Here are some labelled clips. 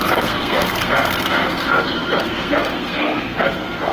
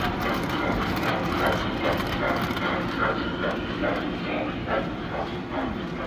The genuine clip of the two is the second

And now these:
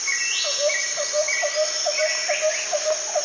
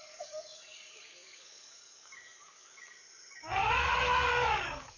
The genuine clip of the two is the first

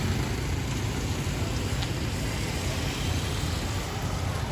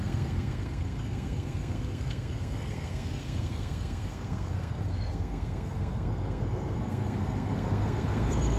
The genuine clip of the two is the first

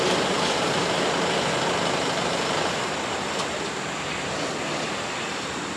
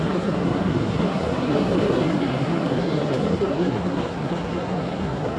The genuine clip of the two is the first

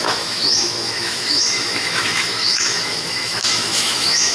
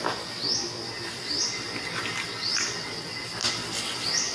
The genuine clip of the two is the second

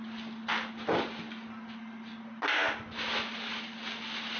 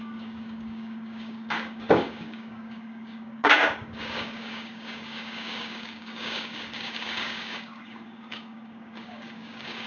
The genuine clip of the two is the first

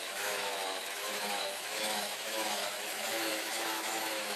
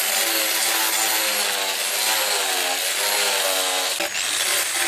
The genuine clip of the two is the second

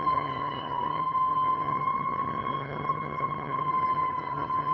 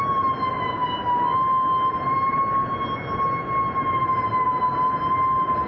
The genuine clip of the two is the second